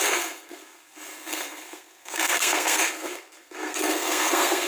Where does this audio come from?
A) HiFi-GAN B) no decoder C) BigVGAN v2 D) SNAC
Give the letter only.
D